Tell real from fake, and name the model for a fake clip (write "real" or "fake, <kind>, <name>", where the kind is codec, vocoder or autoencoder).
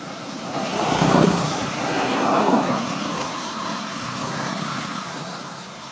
fake, codec, SNAC